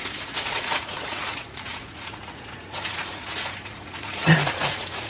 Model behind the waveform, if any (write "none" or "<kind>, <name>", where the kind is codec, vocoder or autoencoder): vocoder, Vocos